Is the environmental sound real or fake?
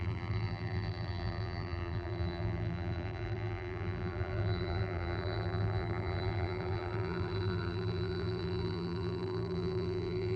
fake